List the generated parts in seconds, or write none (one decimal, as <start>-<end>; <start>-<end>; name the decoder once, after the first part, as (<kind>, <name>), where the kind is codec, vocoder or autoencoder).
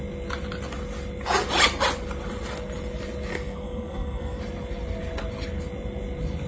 3.3-4.4 (codec, SNAC)